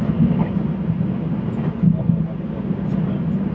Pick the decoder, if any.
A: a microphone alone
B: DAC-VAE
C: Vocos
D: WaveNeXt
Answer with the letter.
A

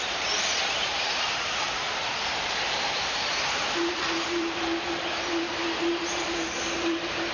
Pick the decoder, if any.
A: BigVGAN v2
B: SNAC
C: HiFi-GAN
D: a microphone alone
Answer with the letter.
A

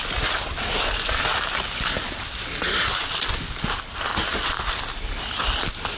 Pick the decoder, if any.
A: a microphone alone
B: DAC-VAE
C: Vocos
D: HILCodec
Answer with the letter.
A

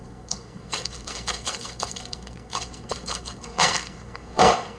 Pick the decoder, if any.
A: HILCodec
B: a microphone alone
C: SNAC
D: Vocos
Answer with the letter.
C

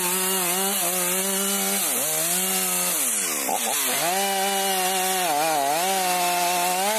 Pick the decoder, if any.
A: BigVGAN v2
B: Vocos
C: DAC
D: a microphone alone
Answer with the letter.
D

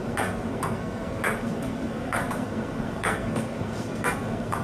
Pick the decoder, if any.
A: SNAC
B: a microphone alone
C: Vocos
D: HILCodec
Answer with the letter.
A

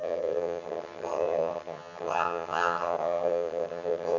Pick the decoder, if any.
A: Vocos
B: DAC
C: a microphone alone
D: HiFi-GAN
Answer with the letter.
D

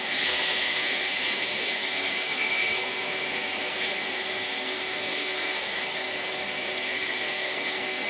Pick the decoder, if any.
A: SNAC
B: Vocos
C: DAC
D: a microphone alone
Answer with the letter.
A